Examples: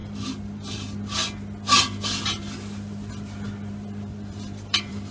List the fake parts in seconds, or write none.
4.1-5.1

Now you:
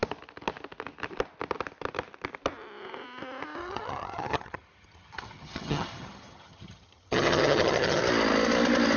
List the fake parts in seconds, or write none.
3.6-8.0